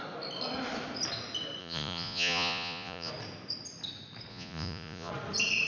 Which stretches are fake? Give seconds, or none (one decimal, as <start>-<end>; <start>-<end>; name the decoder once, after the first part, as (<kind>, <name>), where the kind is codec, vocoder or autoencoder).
1.6-3.1 (vocoder, Vocos); 4.3-5.1